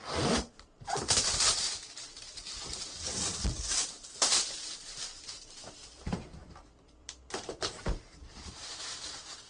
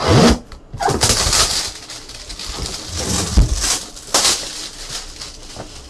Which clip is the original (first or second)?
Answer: second